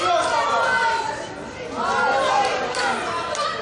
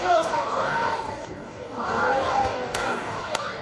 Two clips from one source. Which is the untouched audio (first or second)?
first